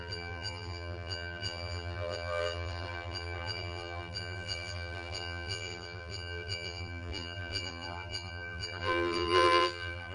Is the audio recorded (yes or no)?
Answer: no